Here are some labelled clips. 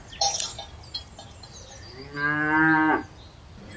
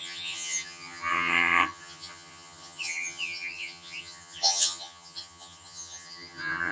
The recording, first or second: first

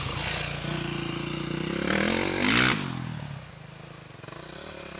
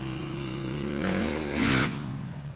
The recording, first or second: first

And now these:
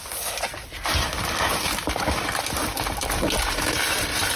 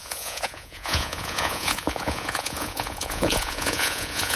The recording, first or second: first